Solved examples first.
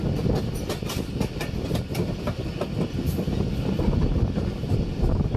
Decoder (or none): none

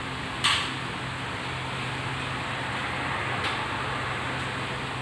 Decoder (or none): none